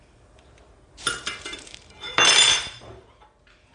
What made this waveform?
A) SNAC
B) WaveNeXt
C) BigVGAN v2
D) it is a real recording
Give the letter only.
C